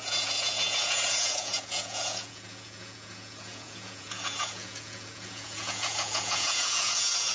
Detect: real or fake fake